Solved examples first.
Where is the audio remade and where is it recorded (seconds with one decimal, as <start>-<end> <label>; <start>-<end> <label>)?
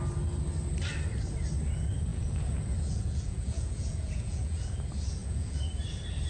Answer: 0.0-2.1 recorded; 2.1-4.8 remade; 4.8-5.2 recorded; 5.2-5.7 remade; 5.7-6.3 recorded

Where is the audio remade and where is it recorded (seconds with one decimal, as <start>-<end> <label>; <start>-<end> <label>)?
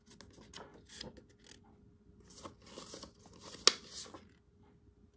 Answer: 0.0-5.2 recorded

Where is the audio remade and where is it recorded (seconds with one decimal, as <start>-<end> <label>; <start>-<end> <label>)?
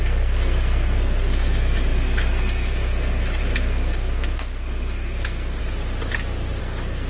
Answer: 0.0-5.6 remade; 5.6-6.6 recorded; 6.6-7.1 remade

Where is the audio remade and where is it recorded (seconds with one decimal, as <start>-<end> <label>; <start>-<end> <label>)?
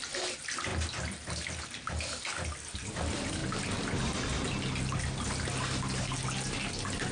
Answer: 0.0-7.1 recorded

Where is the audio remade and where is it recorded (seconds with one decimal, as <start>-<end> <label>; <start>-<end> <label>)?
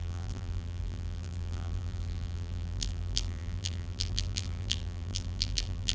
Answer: 0.0-5.9 remade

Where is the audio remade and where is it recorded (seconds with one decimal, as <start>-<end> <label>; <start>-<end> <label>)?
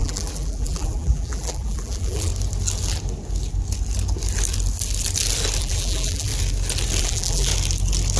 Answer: 0.0-2.3 remade; 2.3-5.6 recorded; 5.6-6.3 remade; 6.3-7.0 recorded; 7.0-7.5 remade; 7.5-8.2 recorded